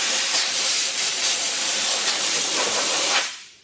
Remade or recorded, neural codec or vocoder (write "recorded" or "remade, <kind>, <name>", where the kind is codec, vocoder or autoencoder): remade, vocoder, BigVGAN v2